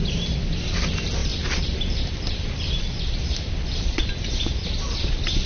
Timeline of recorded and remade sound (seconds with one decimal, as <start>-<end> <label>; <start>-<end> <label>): 0.0-1.2 recorded; 1.2-4.5 remade; 4.5-5.5 recorded